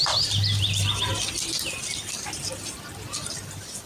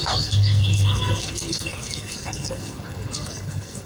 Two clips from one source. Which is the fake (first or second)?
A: second